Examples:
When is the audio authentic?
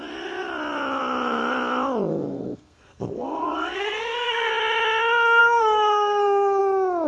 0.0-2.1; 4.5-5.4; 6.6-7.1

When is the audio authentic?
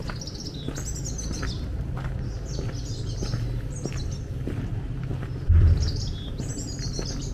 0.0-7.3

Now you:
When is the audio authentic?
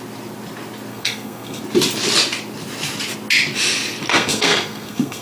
0.0-0.9; 1.6-4.1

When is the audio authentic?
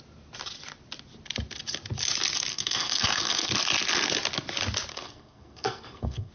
0.0-2.5; 3.5-4.9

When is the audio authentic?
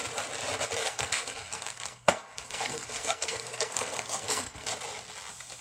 0.0-0.8; 4.7-5.6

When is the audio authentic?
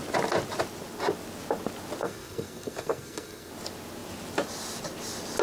0.0-2.0; 3.5-5.4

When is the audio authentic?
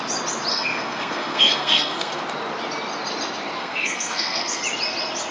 0.0-0.5; 2.2-3.6; 4.6-5.3